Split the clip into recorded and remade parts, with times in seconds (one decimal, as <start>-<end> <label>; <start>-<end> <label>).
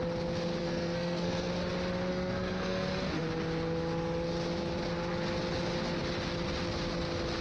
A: 0.0-0.6 recorded; 0.6-1.5 remade; 1.5-2.1 recorded; 2.1-3.2 remade; 3.2-7.4 recorded